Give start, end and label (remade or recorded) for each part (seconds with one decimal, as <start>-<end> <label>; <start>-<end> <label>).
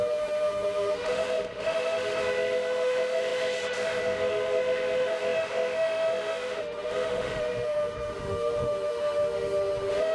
0.0-10.1 remade